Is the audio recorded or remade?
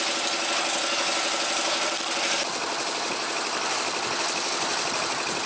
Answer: recorded